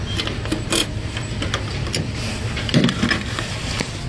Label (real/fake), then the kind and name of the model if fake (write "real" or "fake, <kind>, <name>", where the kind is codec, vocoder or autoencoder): real